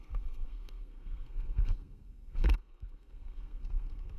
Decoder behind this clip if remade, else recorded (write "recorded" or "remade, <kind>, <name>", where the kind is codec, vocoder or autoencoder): remade, codec, SNAC